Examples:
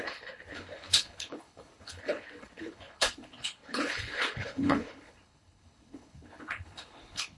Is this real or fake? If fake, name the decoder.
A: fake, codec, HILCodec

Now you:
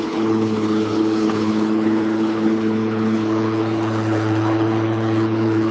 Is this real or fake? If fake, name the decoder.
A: fake, codec, HILCodec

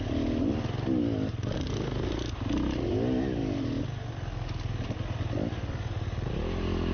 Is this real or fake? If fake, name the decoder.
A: real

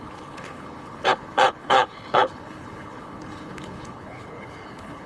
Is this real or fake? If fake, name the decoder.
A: fake, codec, HILCodec